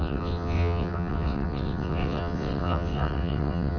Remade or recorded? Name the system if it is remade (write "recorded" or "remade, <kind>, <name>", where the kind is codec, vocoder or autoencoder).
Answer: remade, vocoder, WaveNeXt